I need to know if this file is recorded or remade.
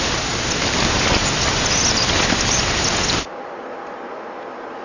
recorded